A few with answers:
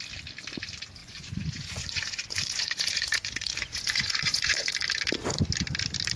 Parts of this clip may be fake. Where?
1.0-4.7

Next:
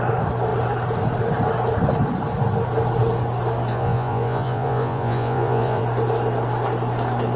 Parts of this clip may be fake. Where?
3.7-5.8